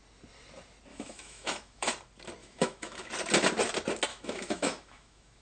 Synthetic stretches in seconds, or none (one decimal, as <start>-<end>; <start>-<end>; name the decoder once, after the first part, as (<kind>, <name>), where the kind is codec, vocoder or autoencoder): 0.9-1.9 (autoencoder, DAC-VAE); 2.4-3.1; 4.1-5.4